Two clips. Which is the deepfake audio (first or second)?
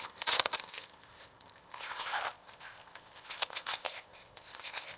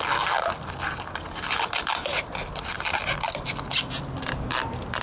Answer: first